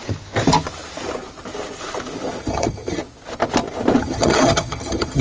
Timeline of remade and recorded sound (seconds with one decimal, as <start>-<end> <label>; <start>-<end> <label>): 0.0-2.4 recorded; 2.4-3.0 remade; 3.0-4.0 recorded; 4.0-5.2 remade